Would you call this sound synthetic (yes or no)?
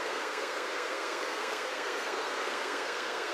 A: yes